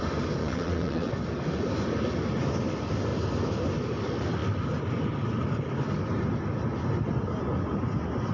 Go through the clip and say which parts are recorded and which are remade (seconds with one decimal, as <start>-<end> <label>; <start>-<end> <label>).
0.0-0.4 recorded; 0.4-1.1 remade; 1.1-8.3 recorded